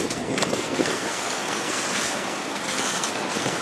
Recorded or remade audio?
remade